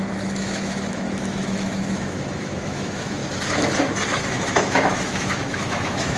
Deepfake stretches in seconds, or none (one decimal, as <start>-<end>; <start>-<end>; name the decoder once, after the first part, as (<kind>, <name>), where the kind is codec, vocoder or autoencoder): 0.0-3.2 (autoencoder, DAC-VAE); 4.1-6.2